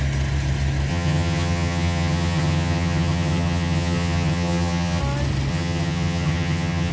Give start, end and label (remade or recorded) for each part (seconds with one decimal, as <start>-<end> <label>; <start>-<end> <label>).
0.0-0.9 recorded; 0.9-5.0 remade; 5.0-5.5 recorded; 5.5-6.9 remade